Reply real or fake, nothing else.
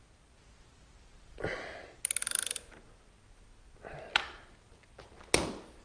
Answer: real